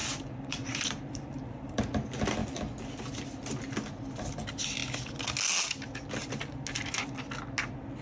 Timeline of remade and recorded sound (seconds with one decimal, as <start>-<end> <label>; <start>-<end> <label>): 0.0-1.8 remade; 1.8-8.0 recorded